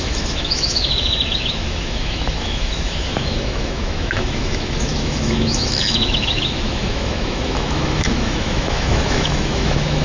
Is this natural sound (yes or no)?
no